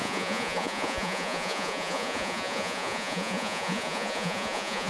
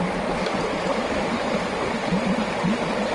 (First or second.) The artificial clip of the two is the first